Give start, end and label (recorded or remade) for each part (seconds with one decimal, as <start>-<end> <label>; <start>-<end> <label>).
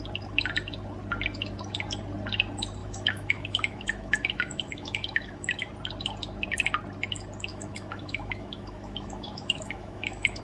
0.0-2.8 recorded; 2.8-5.6 remade; 5.6-7.5 recorded; 7.5-10.4 remade